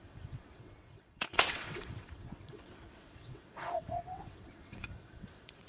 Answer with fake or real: fake